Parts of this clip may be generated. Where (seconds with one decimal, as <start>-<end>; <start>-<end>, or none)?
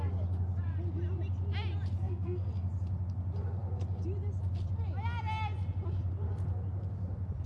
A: 2.0-2.5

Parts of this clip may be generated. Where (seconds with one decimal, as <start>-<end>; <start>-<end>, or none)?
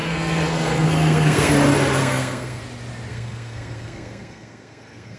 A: 0.0-1.5; 2.0-2.6; 3.1-5.2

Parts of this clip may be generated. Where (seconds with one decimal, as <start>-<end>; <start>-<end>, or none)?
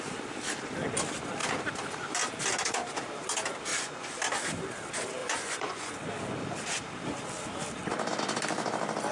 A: 3.7-4.2; 5.2-5.9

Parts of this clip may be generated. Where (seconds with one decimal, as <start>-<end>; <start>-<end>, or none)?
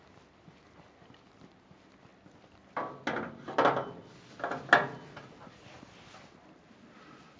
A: none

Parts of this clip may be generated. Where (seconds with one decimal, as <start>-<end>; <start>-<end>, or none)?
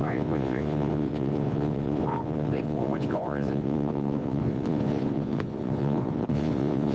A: 0.0-6.9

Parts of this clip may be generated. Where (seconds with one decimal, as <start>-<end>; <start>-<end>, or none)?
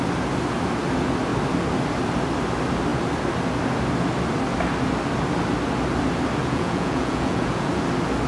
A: 6.4-7.7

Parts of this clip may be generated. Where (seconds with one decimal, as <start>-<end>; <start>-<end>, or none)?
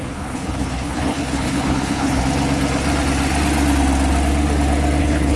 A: 0.0-2.2; 5.0-5.4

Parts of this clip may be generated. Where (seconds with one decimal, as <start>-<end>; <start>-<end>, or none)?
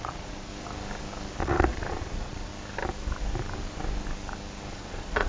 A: 0.0-0.5; 1.4-2.5; 4.7-5.3